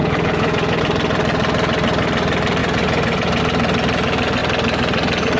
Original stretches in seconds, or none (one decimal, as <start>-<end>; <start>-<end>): 0.8-2.6; 3.4-5.4